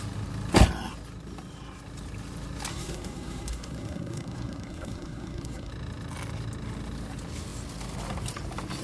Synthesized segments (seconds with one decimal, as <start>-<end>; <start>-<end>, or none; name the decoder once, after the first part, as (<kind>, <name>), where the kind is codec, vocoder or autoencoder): 2.7-5.7 (codec, SNAC)